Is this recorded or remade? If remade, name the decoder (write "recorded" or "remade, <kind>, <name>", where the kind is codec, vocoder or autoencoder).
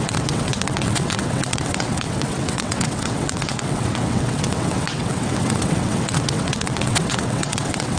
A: remade, vocoder, WaveNeXt